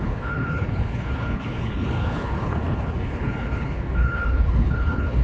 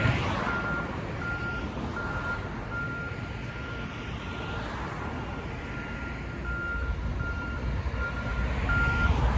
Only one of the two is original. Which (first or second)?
second